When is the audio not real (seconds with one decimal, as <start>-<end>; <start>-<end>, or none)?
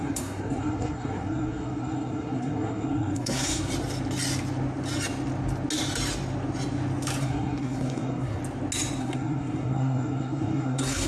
0.0-3.7; 7.2-8.4; 9.0-11.1